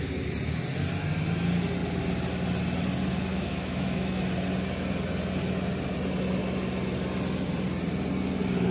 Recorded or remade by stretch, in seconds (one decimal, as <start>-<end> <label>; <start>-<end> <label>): 0.0-3.3 recorded; 3.3-4.2 remade; 4.2-8.7 recorded